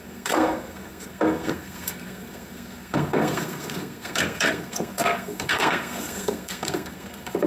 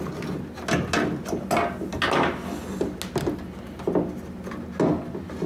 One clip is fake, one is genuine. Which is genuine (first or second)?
second